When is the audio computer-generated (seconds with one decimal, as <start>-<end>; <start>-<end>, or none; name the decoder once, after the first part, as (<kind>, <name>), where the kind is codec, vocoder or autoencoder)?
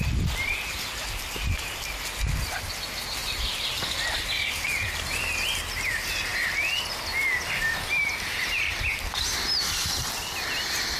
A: 3.2-3.8 (vocoder, BigVGAN v2); 6.3-6.8